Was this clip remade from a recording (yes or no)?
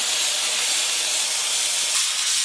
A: no